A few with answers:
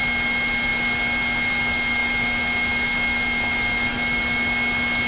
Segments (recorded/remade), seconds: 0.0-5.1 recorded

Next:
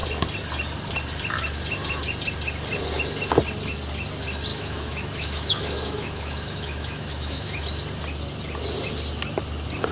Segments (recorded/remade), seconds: 0.0-4.5 recorded; 4.5-7.6 remade; 7.6-9.9 recorded

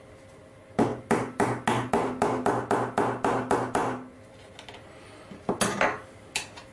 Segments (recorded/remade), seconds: 0.0-6.7 recorded